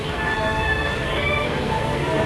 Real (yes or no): no